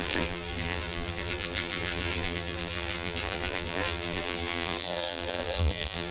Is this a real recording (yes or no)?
no